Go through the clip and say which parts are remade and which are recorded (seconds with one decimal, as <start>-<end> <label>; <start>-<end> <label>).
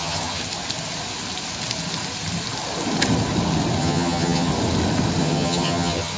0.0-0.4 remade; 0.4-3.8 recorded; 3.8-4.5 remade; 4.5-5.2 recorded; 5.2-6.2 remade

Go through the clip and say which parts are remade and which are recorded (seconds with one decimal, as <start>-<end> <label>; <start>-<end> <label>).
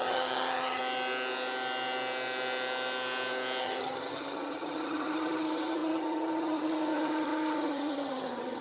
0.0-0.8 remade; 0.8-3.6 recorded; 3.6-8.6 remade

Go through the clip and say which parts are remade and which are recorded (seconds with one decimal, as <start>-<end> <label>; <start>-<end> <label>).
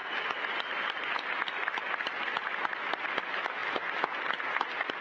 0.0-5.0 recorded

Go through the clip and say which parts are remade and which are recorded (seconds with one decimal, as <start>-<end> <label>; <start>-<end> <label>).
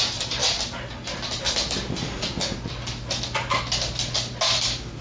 0.0-5.0 recorded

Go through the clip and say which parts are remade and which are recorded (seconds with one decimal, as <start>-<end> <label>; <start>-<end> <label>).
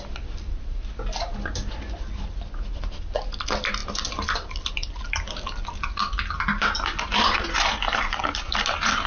0.0-9.1 recorded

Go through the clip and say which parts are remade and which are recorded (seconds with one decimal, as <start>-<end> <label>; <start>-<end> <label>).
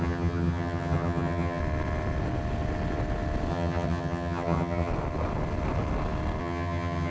0.0-1.6 remade; 1.6-3.5 recorded; 3.5-4.9 remade; 4.9-6.4 recorded; 6.4-7.1 remade